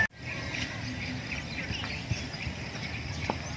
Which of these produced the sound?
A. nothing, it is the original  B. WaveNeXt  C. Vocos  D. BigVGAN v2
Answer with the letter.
A